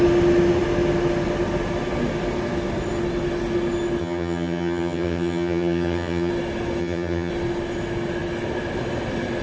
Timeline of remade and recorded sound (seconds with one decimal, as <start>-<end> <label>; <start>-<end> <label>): 0.0-4.0 recorded; 4.0-6.3 remade; 6.3-6.8 recorded; 6.8-7.3 remade; 7.3-9.4 recorded